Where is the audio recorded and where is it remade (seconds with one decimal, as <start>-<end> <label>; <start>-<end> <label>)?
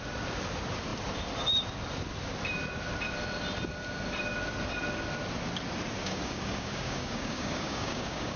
0.0-6.0 recorded; 6.0-8.4 remade